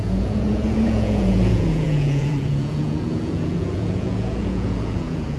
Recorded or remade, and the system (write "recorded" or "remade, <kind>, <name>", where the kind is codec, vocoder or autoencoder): remade, vocoder, Vocos